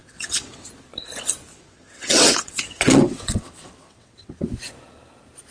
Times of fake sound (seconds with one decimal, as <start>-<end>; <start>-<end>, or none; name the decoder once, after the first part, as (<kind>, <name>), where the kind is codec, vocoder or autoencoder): 0.0-0.7 (vocoder, WaveNeXt); 1.5-4.4